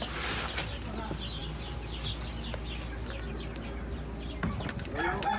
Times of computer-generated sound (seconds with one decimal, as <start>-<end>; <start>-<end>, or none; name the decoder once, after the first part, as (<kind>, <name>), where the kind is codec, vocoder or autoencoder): none

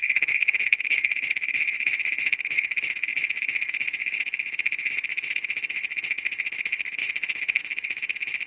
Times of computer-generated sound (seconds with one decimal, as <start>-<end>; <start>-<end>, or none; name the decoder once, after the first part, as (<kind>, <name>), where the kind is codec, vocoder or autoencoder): 0.0-8.5 (codec, ZipCodec)

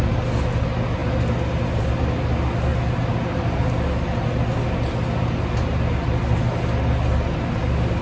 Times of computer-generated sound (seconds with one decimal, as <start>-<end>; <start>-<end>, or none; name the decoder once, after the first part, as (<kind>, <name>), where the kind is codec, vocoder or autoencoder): none

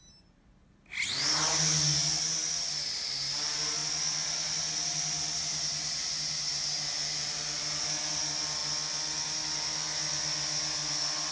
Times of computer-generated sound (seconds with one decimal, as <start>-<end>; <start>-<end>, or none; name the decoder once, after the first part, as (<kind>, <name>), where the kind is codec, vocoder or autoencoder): none

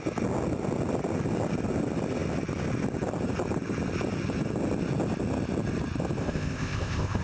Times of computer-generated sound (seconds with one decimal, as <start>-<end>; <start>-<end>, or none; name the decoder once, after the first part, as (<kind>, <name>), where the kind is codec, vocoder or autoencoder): 6.2-7.2 (codec, ZipCodec)

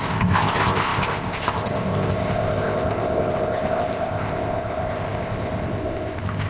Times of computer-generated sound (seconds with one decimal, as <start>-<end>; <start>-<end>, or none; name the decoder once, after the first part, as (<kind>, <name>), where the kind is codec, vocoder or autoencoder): 0.0-6.5 (codec, ZipCodec)

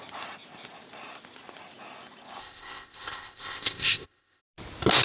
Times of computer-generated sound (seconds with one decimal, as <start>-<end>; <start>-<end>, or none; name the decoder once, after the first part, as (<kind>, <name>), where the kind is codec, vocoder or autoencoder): 2.4-4.4 (codec, ZipCodec)